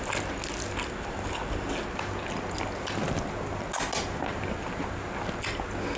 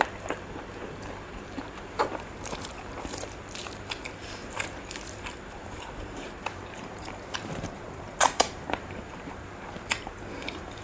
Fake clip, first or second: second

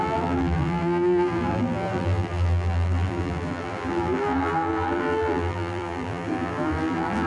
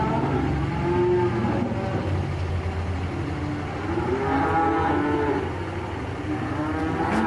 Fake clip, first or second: first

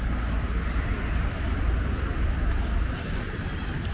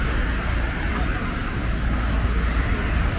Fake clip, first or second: first